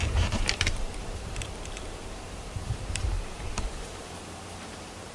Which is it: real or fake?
fake